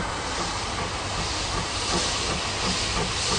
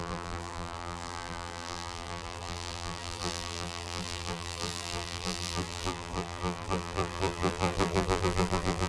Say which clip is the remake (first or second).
second